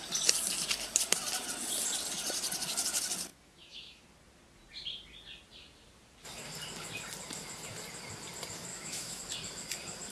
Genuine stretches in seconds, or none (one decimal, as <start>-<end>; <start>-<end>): 0.0-3.3; 4.0-8.7; 9.2-10.1